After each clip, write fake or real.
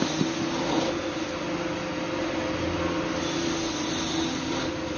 real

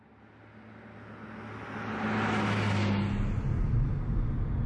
real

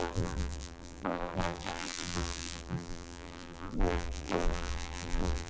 fake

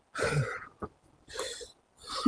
real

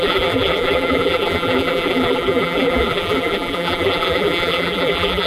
fake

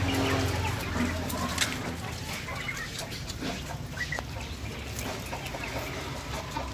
real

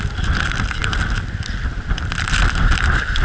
real